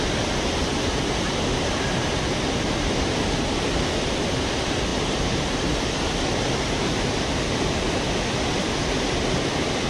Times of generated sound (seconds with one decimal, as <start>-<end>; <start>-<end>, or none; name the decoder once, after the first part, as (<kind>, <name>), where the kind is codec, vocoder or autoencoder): none